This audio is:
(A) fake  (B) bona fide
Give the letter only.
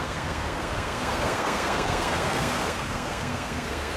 A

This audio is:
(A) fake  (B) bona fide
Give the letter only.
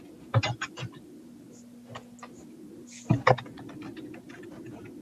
B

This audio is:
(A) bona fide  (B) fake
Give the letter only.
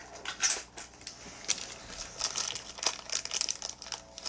A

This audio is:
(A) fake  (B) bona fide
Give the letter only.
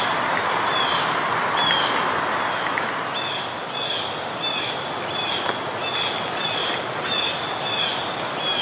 B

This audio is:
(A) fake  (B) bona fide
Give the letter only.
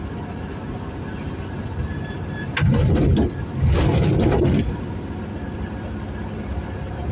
B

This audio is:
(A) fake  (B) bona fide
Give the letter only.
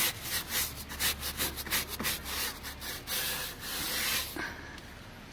B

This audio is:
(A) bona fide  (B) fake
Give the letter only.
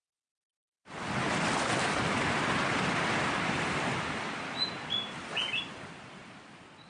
A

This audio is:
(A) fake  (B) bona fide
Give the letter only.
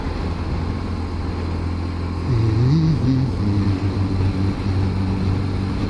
B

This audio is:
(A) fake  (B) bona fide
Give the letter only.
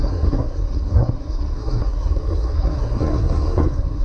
A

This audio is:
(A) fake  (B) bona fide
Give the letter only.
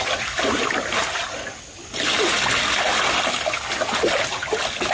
B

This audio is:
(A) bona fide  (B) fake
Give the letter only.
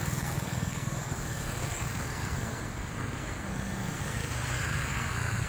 B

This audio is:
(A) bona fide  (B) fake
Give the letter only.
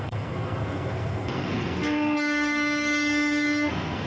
B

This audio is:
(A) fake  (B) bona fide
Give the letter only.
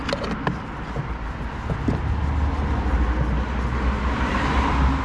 B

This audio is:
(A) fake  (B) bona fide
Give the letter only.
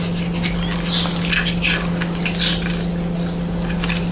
B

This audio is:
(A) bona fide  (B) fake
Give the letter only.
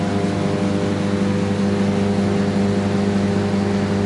A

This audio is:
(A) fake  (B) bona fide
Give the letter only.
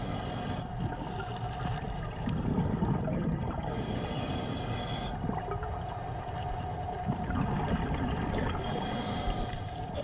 B